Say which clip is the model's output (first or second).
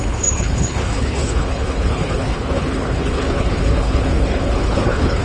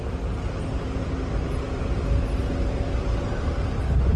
first